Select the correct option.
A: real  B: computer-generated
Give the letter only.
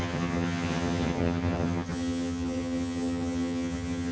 B